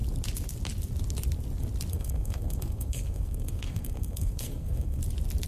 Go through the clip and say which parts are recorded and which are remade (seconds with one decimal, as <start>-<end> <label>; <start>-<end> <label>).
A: 0.0-1.9 recorded; 1.9-5.0 remade; 5.0-5.5 recorded